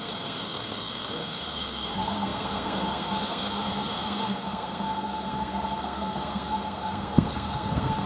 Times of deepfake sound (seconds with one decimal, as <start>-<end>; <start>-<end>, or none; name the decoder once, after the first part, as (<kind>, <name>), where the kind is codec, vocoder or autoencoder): 0.0-8.1 (codec, SNAC)